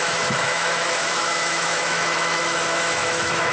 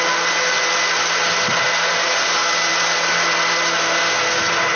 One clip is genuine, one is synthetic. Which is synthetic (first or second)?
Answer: first